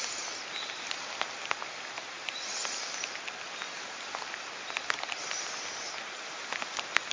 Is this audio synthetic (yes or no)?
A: no